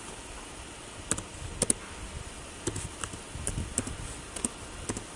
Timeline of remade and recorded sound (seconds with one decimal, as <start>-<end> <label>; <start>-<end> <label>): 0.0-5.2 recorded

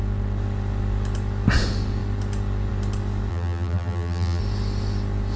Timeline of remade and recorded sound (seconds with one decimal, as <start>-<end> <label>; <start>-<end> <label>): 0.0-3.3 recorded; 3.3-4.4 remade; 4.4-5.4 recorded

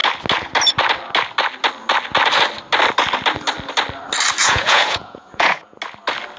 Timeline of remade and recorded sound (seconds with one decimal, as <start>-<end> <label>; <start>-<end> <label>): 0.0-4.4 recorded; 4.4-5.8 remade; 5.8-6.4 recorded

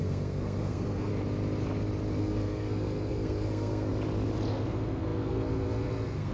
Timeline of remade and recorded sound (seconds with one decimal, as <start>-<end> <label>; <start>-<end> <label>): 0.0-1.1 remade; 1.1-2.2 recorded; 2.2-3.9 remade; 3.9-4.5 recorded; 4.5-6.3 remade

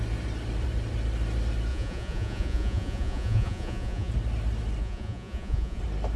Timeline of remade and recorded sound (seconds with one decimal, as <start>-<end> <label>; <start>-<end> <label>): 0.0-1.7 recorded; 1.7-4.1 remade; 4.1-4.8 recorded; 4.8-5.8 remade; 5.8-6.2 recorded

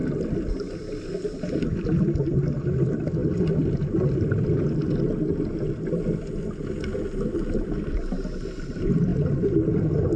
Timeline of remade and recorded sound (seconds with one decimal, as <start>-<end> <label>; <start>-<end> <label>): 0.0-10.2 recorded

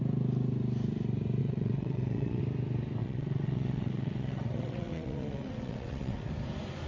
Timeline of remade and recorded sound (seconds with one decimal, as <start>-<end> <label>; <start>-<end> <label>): 0.0-1.4 recorded; 1.4-2.4 remade; 2.4-3.0 recorded; 3.0-6.3 remade; 6.3-6.9 recorded